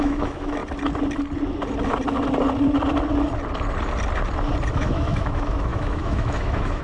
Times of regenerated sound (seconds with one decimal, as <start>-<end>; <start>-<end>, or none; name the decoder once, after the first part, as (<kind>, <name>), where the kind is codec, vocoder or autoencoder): 0.0-0.6 (autoencoder, DAC-VAE); 4.7-6.8